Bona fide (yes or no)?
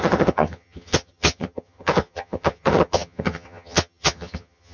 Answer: no